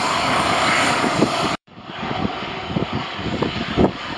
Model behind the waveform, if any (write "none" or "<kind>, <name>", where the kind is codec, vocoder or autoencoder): codec, DAC